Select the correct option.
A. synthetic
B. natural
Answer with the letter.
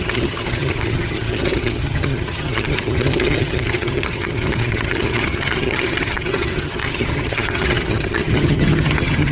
A